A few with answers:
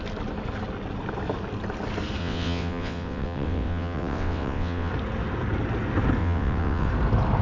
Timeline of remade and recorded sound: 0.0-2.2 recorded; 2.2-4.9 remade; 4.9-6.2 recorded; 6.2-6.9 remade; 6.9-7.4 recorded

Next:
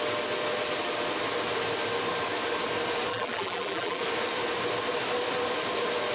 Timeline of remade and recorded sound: 0.0-3.1 recorded; 3.1-4.0 remade; 4.0-6.1 recorded